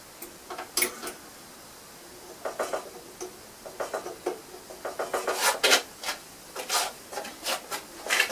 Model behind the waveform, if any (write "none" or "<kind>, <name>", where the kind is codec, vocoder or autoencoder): none